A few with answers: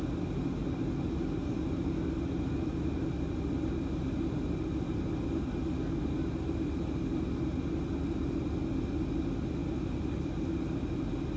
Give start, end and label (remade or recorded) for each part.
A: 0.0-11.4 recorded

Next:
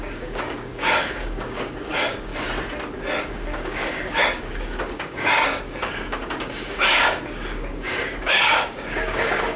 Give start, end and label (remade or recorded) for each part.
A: 0.0-2.3 remade; 2.3-3.2 recorded; 3.2-9.6 remade

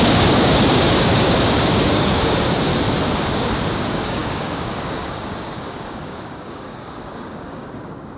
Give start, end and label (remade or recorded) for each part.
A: 0.0-2.7 remade; 2.7-3.3 recorded; 3.3-8.2 remade

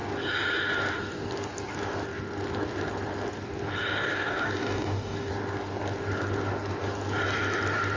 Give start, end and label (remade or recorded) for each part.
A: 0.0-4.0 recorded; 4.0-5.3 remade; 5.3-8.0 recorded